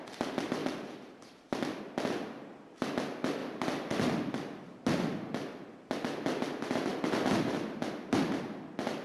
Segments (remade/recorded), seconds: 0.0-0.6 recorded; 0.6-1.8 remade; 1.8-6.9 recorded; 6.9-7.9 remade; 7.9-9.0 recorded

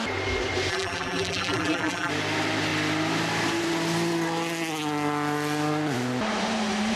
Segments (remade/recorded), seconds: 0.0-0.7 recorded; 0.7-2.1 remade; 2.1-7.0 recorded

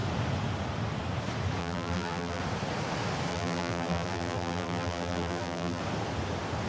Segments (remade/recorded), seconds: 0.0-1.6 recorded; 1.6-2.4 remade; 2.4-3.3 recorded; 3.3-5.8 remade; 5.8-6.7 recorded

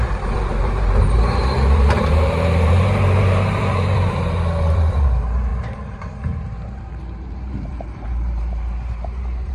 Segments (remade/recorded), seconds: 0.0-9.5 remade

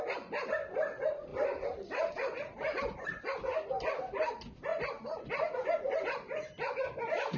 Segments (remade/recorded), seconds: 0.0-1.3 recorded; 1.3-3.0 remade; 3.0-4.7 recorded; 4.7-5.3 remade; 5.3-7.4 recorded

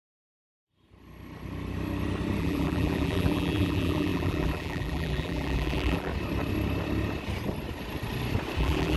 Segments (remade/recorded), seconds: 0.0-2.4 recorded; 2.4-6.1 remade; 6.1-8.6 recorded; 8.6-9.0 remade